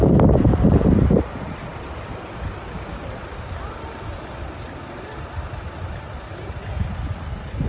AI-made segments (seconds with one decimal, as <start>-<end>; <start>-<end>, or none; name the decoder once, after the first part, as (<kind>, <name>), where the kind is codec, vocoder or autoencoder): none